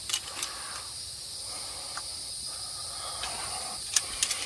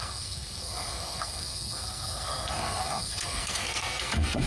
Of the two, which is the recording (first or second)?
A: first